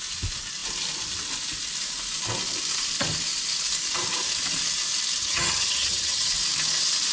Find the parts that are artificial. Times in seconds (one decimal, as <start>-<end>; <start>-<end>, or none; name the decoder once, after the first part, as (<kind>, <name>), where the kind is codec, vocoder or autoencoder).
5.2-6.3 (vocoder, HiFi-GAN)